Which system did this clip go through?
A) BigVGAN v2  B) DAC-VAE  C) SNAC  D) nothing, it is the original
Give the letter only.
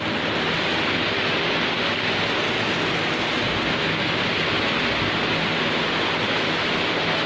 D